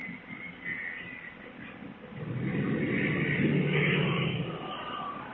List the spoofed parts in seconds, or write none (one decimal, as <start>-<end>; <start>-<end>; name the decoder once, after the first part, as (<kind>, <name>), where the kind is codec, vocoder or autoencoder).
3.5-4.5 (codec, DAC)